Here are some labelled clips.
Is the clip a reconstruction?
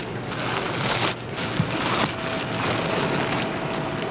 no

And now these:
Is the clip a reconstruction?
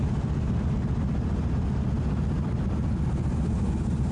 no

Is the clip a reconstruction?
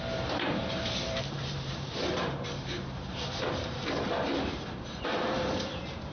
yes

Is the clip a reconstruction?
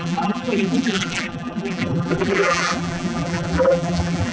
yes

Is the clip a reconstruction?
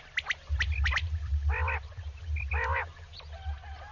no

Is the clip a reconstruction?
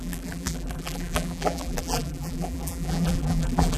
yes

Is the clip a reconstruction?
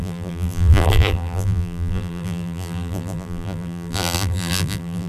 yes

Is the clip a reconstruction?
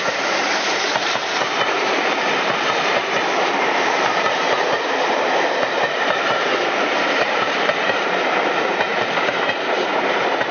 yes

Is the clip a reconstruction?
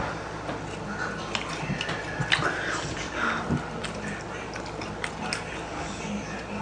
no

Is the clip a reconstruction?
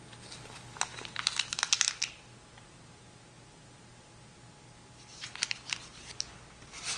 no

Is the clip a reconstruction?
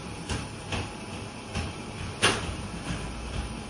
yes